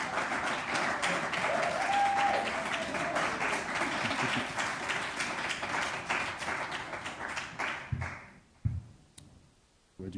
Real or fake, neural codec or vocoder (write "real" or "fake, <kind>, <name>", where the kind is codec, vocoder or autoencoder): real